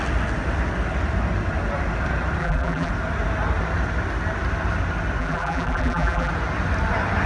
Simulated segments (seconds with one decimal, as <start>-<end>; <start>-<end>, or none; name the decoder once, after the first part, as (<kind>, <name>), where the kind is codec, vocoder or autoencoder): 2.4-2.9 (vocoder, BigVGAN v2); 5.2-6.3

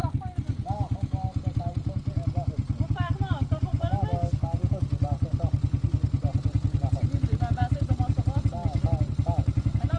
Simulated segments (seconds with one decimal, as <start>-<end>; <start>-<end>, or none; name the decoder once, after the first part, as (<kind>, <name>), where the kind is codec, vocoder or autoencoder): none

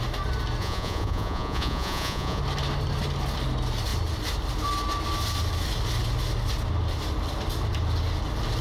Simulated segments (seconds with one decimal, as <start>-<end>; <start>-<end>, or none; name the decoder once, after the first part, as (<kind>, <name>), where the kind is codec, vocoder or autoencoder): 0.6-2.4 (vocoder, Vocos)

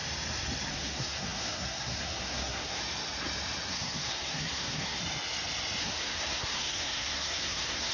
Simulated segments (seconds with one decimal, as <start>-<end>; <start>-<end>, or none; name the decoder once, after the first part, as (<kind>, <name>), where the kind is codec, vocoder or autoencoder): 0.7-2.8 (codec, SNAC); 3.7-5.0; 5.8-7.9